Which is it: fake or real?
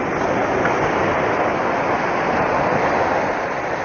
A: real